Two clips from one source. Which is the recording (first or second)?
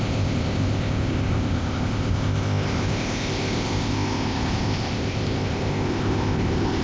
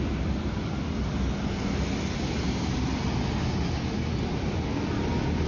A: second